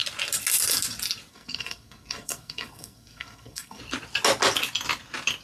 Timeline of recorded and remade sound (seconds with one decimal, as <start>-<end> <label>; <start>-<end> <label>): 0.0-1.3 recorded; 1.3-3.8 remade; 3.8-5.4 recorded